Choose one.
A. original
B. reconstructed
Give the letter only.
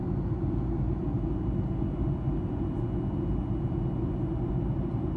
A